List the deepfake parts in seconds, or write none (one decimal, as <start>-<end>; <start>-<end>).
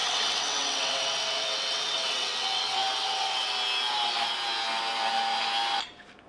0.0-3.5